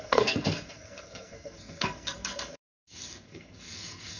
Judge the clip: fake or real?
fake